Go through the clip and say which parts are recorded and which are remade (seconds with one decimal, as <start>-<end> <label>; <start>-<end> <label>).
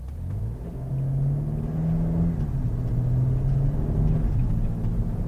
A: 0.0-0.4 recorded; 0.4-0.9 remade; 0.9-5.3 recorded